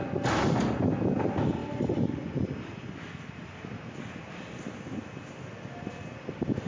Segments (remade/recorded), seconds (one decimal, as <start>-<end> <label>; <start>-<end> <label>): 0.0-6.7 recorded

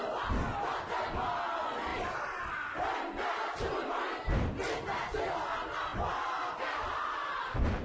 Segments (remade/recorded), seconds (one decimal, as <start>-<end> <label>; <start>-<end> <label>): 0.0-1.9 recorded; 1.9-3.7 remade; 3.7-7.8 recorded

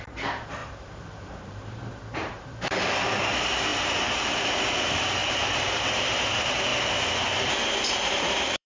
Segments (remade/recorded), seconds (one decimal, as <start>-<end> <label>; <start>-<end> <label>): 0.0-6.7 remade; 6.7-8.0 recorded; 8.0-8.7 remade

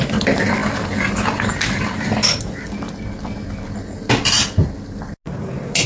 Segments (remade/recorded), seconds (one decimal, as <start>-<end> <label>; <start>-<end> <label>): 0.0-5.9 recorded

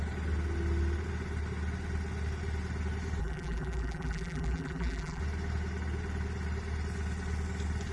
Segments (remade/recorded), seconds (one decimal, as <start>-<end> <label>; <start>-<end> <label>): 0.0-3.2 recorded; 3.2-5.2 remade; 5.2-7.9 recorded

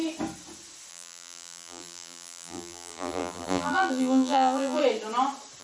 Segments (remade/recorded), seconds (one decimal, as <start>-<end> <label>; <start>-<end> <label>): 0.0-0.9 recorded; 0.9-4.8 remade; 4.8-5.6 recorded

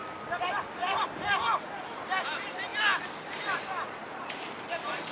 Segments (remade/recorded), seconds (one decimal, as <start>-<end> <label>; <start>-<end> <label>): 0.0-1.0 remade; 1.0-2.7 recorded; 2.7-5.1 remade